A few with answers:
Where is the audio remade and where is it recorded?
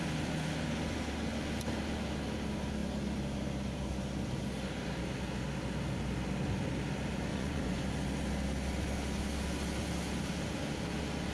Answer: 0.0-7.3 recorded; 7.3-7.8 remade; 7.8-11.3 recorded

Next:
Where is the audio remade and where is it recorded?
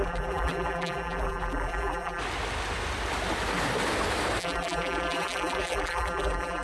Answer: 0.0-2.2 remade; 2.2-4.4 recorded; 4.4-6.6 remade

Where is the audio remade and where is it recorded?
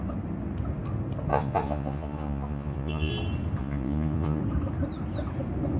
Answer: 0.0-1.3 recorded; 1.3-3.1 remade; 3.1-3.6 recorded; 3.6-4.4 remade; 4.4-5.8 recorded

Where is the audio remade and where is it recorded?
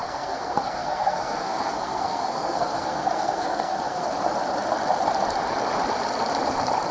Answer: 0.0-4.1 remade; 4.1-6.9 recorded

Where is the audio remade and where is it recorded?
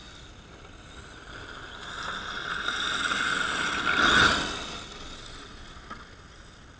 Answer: 0.0-6.8 recorded